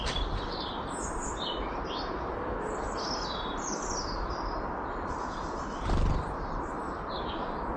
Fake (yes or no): no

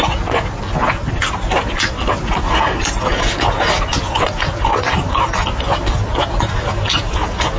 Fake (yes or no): no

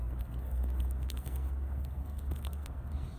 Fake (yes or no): yes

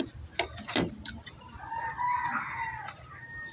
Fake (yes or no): no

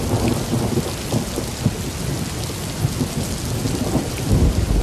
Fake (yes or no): no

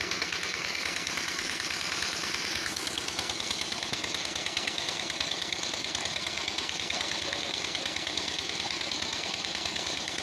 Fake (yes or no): yes